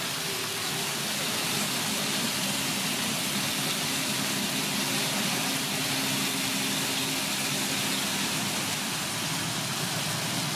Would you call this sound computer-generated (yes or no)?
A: no